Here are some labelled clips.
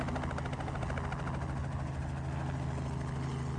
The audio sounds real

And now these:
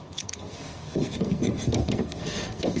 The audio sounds fake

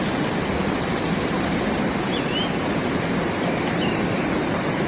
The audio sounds real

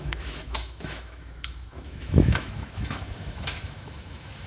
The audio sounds fake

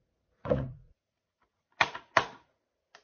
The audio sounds fake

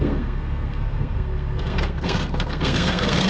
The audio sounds fake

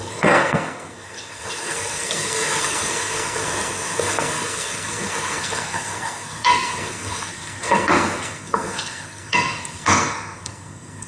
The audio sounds fake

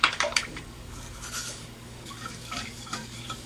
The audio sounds fake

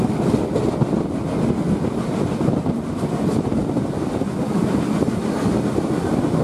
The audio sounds real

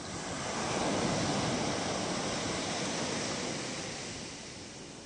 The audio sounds real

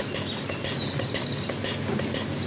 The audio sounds real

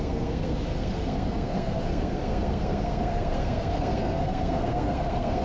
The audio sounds fake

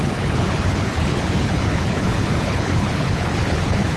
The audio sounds fake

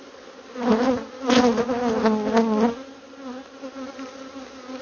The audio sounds real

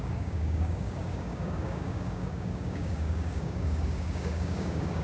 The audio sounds fake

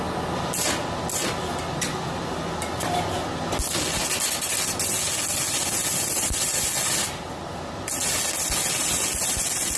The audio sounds real